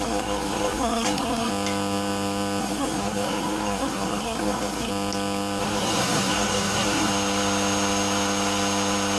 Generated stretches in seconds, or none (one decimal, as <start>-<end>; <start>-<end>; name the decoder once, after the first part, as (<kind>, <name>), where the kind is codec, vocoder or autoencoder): 0.0-1.5 (codec, SNAC); 2.6-4.9; 5.6-7.1